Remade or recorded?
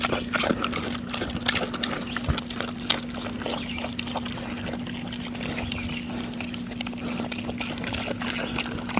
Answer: recorded